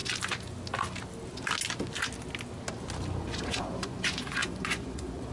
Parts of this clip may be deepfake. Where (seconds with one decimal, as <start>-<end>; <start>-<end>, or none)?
3.2-5.3